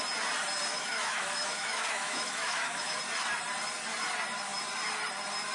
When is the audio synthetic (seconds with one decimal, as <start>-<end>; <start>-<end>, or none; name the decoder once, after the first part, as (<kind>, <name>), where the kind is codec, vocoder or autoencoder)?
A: 0.7-3.0 (autoencoder, DAC-VAE)

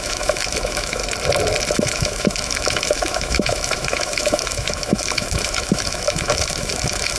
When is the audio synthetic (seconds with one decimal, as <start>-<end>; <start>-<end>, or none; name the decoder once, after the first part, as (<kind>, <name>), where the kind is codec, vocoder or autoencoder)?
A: 0.0-1.0 (autoencoder, DAC-VAE); 1.7-7.2

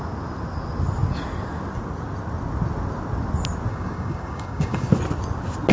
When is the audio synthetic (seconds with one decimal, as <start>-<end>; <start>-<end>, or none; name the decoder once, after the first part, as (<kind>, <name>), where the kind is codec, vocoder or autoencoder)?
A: 3.7-4.9 (codec, DAC)

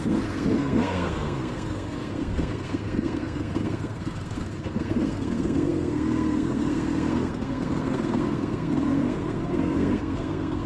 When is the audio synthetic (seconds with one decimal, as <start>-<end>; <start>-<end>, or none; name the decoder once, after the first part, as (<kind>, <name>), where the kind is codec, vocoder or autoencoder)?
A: 0.0-10.7 (codec, SNAC)

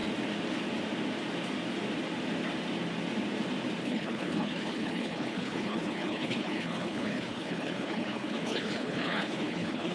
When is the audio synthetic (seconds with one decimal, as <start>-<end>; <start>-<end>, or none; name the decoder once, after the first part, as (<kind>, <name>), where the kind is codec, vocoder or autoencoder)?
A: 3.8-9.9 (codec, HILCodec)